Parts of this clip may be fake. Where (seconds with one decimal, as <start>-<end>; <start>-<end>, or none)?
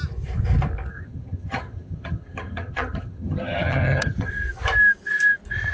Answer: 0.9-4.3